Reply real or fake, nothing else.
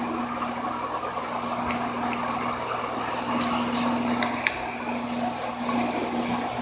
real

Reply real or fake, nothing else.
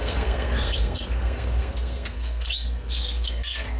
fake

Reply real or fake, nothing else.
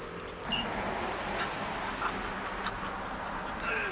real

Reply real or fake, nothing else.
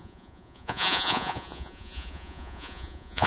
fake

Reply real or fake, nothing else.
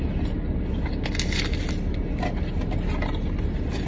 real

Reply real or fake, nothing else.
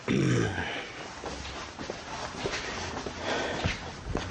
real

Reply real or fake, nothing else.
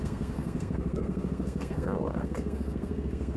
fake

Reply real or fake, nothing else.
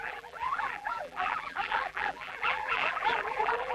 fake